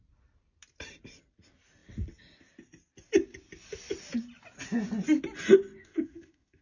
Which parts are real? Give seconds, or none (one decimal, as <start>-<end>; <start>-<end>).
0.0-5.8